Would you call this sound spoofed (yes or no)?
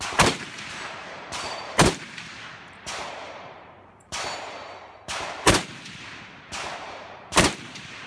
yes